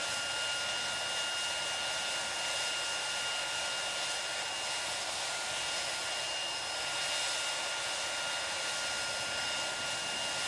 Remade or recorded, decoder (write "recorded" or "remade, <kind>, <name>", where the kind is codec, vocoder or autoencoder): recorded